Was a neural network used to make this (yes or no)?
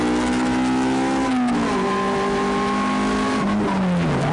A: no